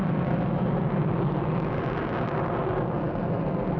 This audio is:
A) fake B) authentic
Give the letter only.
B